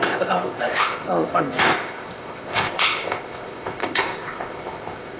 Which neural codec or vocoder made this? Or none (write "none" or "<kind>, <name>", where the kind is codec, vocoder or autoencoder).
codec, ZipCodec